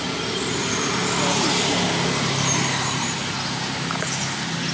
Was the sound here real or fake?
real